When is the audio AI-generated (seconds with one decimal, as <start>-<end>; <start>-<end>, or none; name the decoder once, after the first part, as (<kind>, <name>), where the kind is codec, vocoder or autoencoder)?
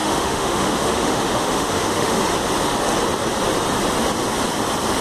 0.0-2.2 (autoencoder, DAC-VAE)